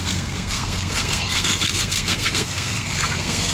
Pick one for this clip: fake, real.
fake